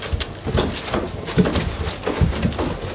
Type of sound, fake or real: real